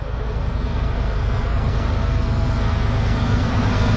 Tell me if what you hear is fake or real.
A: fake